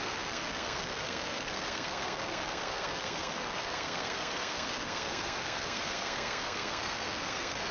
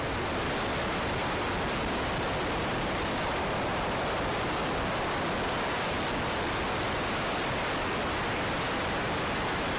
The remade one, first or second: first